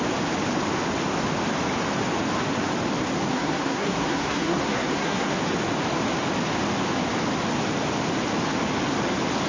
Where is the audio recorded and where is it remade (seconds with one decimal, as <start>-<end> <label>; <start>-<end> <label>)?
0.0-3.3 recorded; 3.3-5.4 remade; 5.4-9.5 recorded